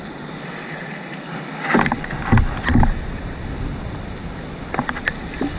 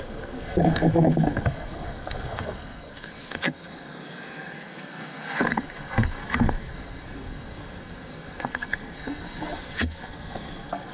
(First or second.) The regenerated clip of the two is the second